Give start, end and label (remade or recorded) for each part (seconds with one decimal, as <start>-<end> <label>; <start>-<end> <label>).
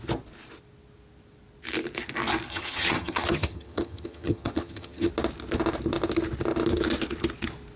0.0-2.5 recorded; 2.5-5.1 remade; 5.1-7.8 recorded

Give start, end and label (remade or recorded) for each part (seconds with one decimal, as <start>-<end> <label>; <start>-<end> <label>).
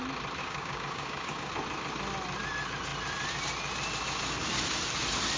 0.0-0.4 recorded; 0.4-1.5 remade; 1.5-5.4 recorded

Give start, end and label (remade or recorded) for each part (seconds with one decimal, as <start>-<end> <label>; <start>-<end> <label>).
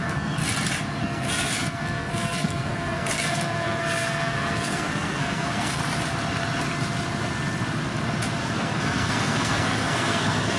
0.0-0.4 remade; 0.4-1.0 recorded; 1.0-5.8 remade; 5.8-8.4 recorded; 8.4-10.6 remade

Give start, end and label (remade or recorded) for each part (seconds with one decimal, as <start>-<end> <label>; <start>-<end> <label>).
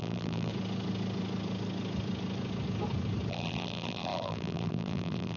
0.0-0.5 remade; 0.5-3.3 recorded; 3.3-5.4 remade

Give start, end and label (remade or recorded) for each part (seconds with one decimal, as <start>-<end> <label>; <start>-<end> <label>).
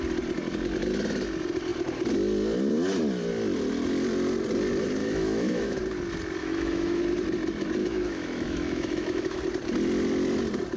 0.0-5.0 recorded; 5.0-5.8 remade; 5.8-6.4 recorded; 6.4-7.0 remade; 7.0-7.8 recorded; 7.8-9.4 remade; 9.4-10.8 recorded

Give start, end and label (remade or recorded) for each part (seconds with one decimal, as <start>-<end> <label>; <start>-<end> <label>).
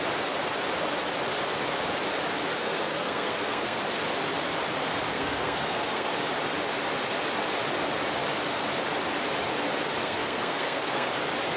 0.0-2.6 recorded; 2.6-3.8 remade; 3.8-5.1 recorded; 5.1-6.1 remade; 6.1-10.0 recorded; 10.0-11.1 remade; 11.1-11.6 recorded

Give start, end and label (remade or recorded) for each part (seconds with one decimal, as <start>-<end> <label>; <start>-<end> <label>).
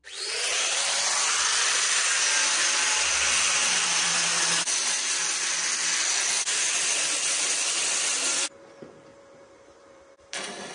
0.0-1.0 remade; 1.0-9.1 recorded; 9.1-10.7 remade